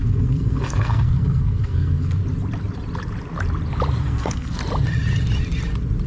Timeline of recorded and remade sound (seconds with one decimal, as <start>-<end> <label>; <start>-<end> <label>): 0.0-2.2 remade; 2.2-4.0 recorded; 4.0-4.6 remade; 4.6-6.1 recorded